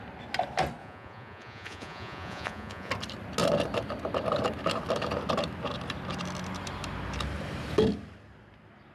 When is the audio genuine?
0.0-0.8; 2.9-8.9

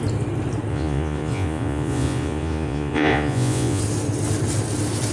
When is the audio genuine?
0.0-0.7; 3.8-5.1

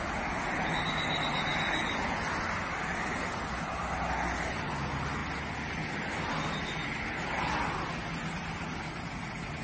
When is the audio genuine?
0.0-9.6

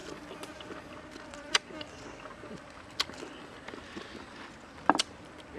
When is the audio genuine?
0.0-5.6